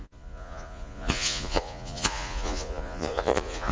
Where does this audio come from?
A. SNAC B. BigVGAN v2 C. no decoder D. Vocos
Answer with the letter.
D